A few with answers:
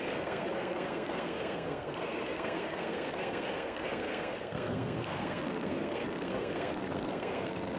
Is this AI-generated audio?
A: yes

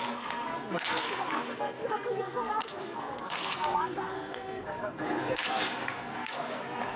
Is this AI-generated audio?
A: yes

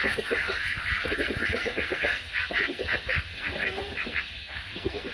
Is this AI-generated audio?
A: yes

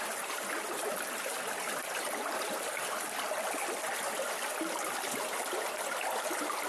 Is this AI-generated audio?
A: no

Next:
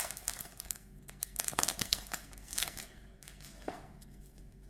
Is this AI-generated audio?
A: yes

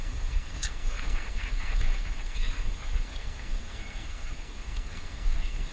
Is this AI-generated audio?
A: yes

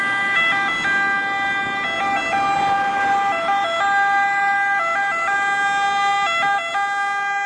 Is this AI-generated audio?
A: no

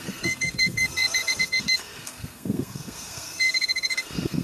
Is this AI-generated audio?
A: yes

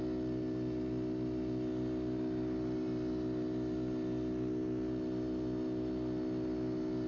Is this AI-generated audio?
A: no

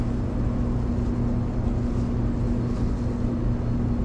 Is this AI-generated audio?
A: no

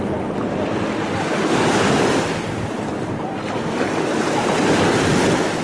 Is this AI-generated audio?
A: no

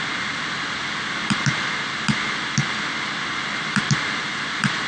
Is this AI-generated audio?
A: no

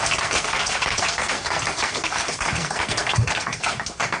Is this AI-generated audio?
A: yes